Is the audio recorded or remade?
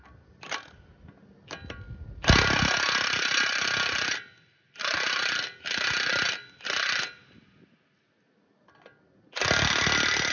recorded